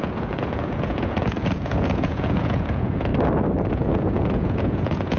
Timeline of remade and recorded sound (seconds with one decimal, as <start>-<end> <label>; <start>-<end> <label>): 0.0-3.1 remade; 3.1-3.7 recorded; 3.7-5.2 remade

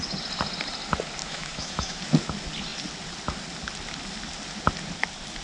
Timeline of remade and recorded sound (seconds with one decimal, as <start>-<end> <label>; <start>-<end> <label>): 0.0-1.2 recorded; 1.2-2.0 remade; 2.0-5.4 recorded